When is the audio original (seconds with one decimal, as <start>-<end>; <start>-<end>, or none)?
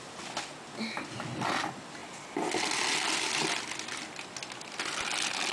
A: 0.0-5.5